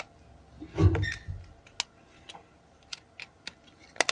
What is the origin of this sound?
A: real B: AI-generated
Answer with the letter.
A